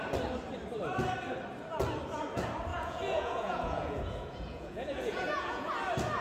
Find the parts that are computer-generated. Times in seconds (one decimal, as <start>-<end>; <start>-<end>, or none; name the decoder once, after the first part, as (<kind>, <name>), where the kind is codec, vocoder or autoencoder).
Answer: 2.7-5.7 (vocoder, Vocos)